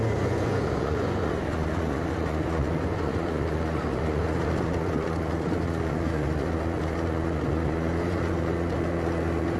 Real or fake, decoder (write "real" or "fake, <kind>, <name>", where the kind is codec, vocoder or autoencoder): fake, vocoder, Vocos